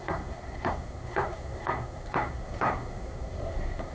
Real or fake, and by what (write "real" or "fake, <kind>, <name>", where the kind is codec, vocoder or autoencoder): fake, codec, SNAC